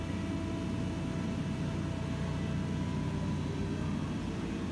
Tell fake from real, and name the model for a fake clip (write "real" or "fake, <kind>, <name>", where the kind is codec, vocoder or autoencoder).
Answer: real